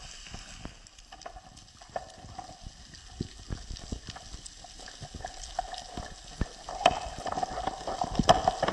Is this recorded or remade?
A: recorded